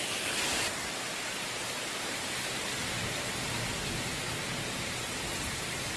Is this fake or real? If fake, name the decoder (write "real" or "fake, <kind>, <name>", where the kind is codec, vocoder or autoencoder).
real